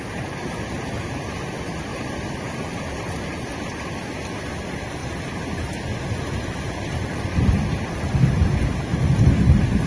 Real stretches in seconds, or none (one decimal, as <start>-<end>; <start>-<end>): 0.0-1.9; 2.9-5.0; 7.6-8.9